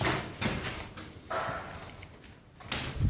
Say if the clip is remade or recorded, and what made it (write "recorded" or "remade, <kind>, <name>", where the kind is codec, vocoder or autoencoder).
recorded